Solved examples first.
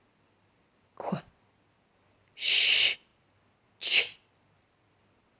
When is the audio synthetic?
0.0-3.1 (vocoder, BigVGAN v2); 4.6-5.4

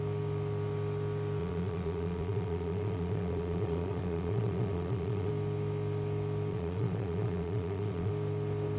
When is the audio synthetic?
1.4-5.3 (vocoder, Vocos); 6.5-8.1

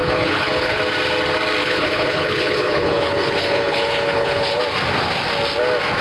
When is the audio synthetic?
0.0-0.8 (codec, HILCodec); 1.6-4.6

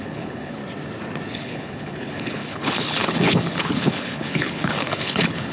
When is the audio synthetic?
0.0-0.6 (codec, HILCodec); 1.3-5.5

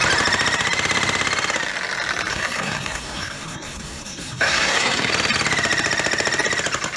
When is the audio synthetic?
2.3-5.1 (codec, SNAC)

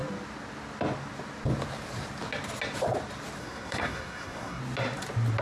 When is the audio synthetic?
3.4-4.6 (codec, SNAC)

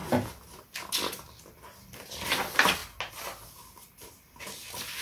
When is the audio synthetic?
0.0-0.6 (vocoder, BigVGAN v2)

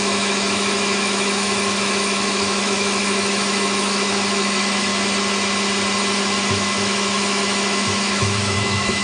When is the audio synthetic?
0.0-4.9 (autoencoder, DAC-VAE); 6.2-9.0